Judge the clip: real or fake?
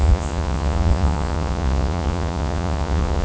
fake